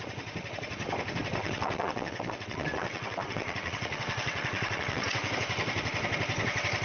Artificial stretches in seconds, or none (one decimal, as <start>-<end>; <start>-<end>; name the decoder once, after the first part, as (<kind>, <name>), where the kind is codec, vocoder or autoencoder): 1.4-5.3 (vocoder, WaveNeXt)